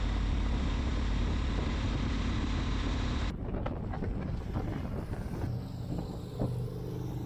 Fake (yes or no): no